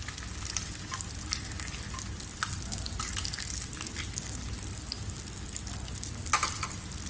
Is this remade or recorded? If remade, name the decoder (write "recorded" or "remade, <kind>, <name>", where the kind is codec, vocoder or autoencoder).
recorded